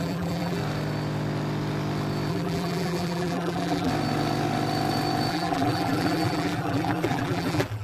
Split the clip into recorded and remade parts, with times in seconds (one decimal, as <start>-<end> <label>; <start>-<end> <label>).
0.0-0.6 remade; 0.6-2.3 recorded; 2.3-3.9 remade; 3.9-5.3 recorded; 5.3-7.8 remade